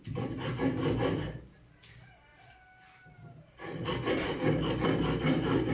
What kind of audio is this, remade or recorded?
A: recorded